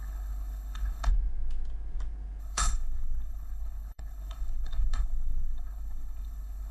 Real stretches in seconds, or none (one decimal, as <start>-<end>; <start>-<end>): 1.1-2.4